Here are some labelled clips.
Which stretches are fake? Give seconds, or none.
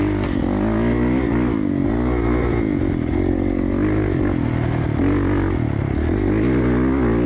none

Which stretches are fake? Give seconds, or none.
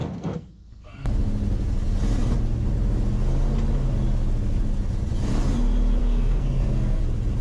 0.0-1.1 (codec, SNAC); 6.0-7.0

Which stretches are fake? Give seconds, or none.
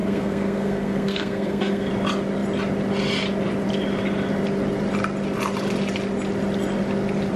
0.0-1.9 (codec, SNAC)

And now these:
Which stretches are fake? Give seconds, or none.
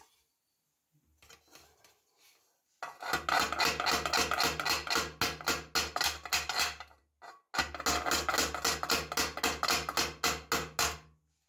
none